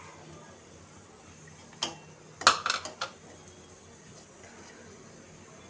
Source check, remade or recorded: recorded